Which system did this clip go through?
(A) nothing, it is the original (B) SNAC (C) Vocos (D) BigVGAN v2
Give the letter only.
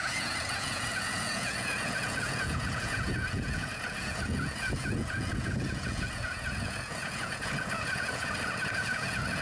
C